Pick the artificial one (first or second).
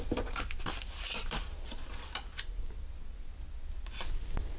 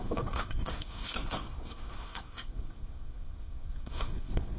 second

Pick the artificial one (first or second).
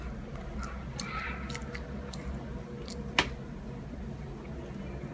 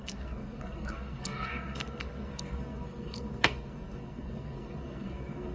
second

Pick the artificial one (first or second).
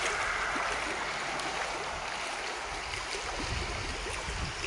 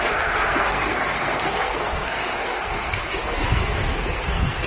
second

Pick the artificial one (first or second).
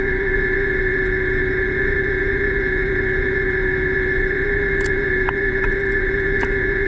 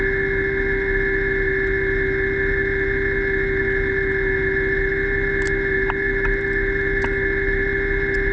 first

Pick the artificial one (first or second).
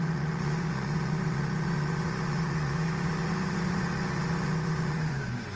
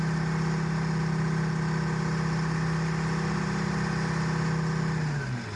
first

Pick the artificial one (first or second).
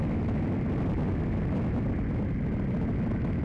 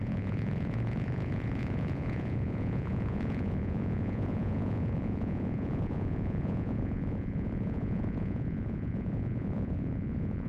second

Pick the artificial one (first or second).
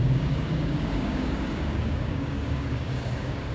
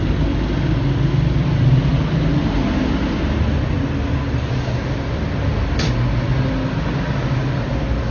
first